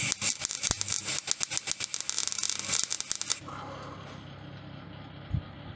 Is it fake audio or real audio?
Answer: real